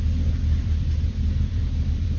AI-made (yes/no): yes